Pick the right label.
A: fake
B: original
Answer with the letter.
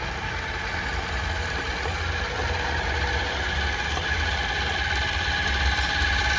B